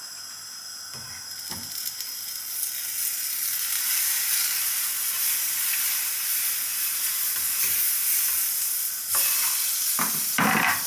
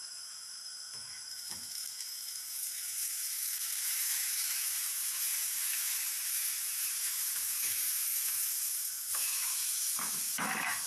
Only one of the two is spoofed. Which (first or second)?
second